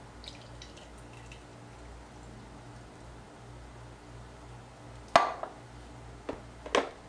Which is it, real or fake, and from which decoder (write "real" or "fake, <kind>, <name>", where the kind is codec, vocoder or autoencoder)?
real